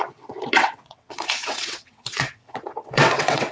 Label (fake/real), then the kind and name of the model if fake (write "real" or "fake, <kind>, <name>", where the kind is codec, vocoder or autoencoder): fake, vocoder, WaveNeXt